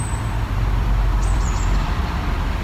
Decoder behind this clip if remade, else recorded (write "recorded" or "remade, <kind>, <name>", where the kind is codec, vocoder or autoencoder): remade, vocoder, BigVGAN v2